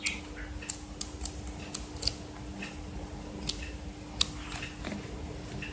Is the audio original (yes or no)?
yes